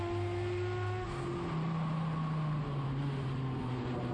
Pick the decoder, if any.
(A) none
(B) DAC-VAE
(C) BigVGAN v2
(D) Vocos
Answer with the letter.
A